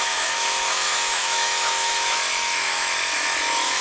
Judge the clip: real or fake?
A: fake